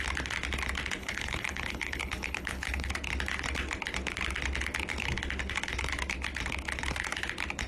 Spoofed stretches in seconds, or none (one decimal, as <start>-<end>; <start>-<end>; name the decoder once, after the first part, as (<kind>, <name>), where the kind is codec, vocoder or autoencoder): 1.0-2.9 (codec, HILCodec)